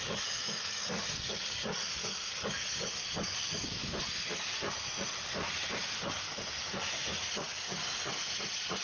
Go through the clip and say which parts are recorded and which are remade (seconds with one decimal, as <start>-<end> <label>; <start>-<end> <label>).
0.0-3.8 remade; 3.8-7.3 recorded; 7.3-8.0 remade; 8.0-8.8 recorded